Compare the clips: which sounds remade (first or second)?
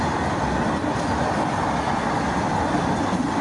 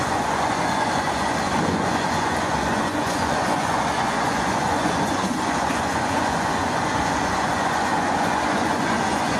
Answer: second